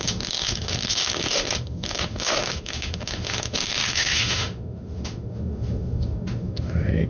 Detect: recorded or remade remade